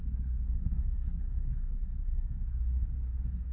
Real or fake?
fake